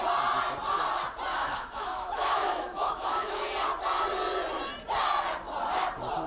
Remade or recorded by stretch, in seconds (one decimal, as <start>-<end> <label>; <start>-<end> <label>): 0.0-1.3 recorded; 1.3-3.5 remade; 3.5-6.3 recorded